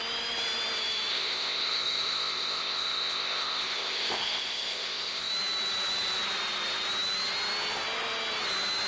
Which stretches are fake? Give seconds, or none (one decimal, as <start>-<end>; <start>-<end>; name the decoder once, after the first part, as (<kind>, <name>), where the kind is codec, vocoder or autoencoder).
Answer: 1.1-5.3 (codec, ZipCodec)